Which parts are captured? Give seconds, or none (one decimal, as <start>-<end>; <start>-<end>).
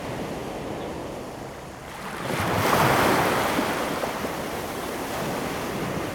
0.0-6.1